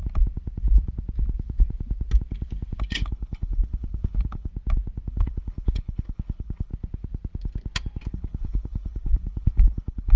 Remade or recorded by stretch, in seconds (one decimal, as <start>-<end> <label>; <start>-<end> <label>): 0.0-2.8 recorded; 2.8-4.5 remade; 4.5-5.1 recorded; 5.1-6.7 remade; 6.7-8.1 recorded; 8.1-10.2 remade

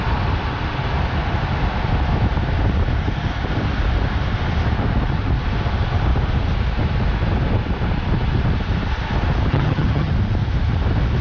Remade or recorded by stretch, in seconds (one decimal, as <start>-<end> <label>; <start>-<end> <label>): 0.0-9.5 recorded; 9.5-10.1 remade; 10.1-11.2 recorded

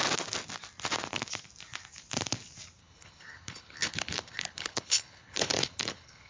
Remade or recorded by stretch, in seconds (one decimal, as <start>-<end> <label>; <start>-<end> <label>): 0.0-2.8 recorded; 2.8-6.3 remade

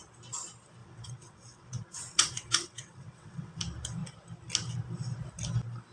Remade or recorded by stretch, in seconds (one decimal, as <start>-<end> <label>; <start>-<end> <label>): 0.0-0.8 recorded; 0.8-3.6 remade; 3.6-5.9 recorded

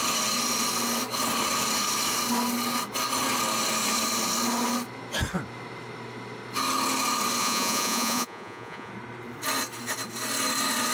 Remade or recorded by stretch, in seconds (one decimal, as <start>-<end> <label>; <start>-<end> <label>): 0.0-7.4 recorded; 7.4-8.9 remade; 8.9-10.9 recorded

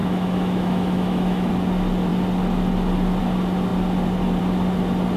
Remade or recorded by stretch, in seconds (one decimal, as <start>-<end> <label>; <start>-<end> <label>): 0.0-1.5 remade; 1.5-5.2 recorded

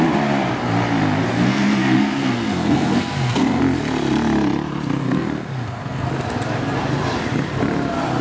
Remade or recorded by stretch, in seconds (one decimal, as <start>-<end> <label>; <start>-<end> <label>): 0.0-1.3 recorded; 1.3-3.6 remade; 3.6-5.0 recorded; 5.0-6.1 remade; 6.1-8.2 recorded

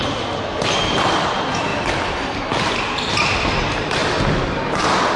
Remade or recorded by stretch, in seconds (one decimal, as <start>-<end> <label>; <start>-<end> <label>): 0.0-5.2 recorded